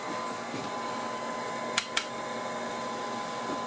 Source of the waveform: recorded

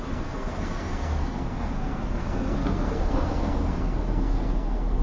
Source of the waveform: remade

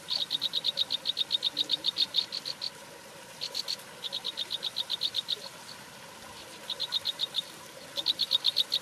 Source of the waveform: recorded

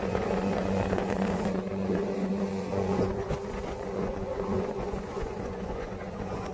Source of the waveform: remade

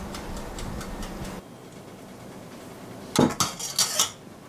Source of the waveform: recorded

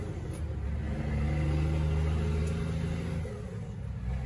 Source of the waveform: recorded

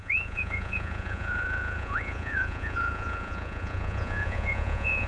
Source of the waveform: remade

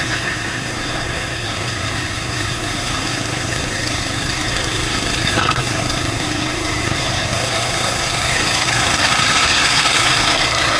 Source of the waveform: remade